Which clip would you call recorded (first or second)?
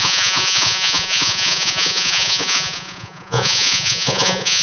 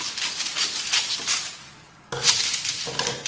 second